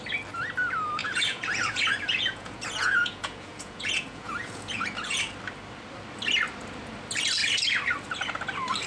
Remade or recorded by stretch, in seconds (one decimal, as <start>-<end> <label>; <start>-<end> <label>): 0.0-1.0 recorded; 1.0-5.2 remade; 5.2-8.9 recorded